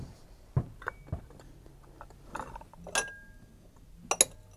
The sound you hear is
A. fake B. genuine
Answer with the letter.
B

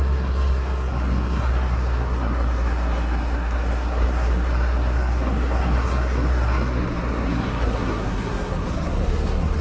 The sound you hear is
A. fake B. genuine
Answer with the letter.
A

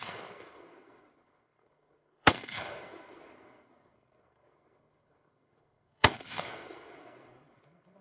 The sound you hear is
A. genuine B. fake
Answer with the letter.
B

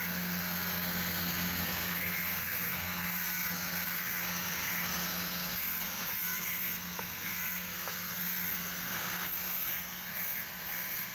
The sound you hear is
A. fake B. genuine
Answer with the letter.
A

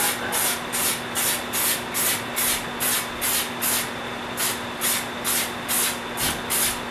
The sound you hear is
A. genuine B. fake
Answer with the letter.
A